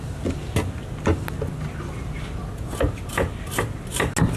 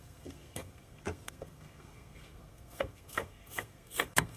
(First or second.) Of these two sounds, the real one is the first